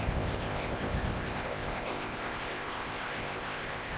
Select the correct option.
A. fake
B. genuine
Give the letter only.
A